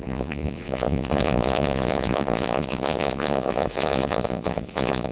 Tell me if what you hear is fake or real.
fake